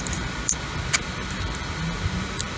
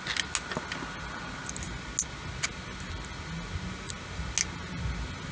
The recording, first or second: second